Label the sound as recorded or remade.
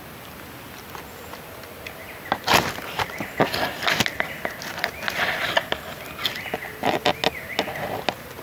recorded